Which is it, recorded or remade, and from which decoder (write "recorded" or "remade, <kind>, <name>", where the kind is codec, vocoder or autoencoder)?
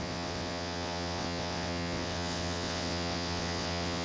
remade, vocoder, WaveNeXt